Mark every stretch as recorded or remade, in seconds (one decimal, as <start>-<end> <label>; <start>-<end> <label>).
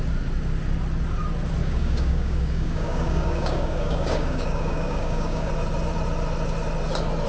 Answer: 0.0-1.6 recorded; 1.6-5.5 remade; 5.5-7.3 recorded